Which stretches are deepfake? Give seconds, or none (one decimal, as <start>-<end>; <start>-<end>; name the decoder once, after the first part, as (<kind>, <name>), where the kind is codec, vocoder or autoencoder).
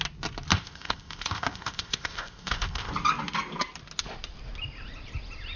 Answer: 0.5-2.9 (codec, ZipCodec)